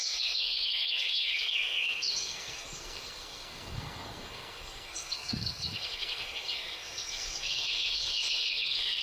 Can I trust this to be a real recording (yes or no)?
no